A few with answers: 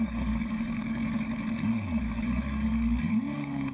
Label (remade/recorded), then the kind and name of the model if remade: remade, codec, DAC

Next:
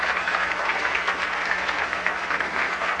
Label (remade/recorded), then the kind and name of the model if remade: remade, codec, SNAC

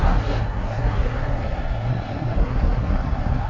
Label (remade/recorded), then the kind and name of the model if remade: remade, codec, SNAC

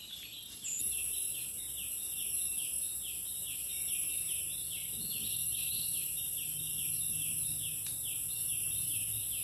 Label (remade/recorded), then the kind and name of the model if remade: recorded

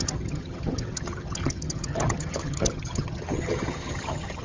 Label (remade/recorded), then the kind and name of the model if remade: remade, vocoder, HiFi-GAN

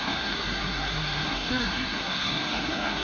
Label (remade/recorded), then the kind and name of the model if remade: remade, codec, SNAC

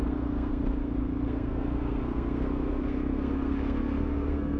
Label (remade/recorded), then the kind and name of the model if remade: remade, codec, SNAC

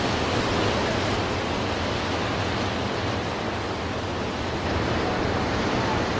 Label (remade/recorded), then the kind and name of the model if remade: recorded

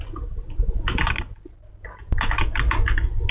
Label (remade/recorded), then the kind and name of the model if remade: recorded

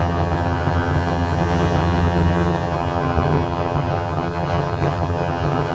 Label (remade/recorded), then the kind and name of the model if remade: remade, vocoder, HiFi-GAN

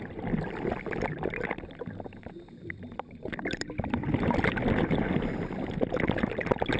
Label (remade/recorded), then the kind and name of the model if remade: remade, vocoder, BigVGAN v2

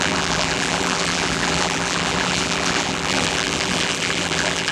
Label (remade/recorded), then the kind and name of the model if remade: remade, vocoder, BigVGAN v2